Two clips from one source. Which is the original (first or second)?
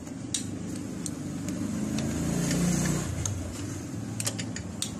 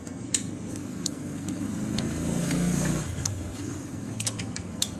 first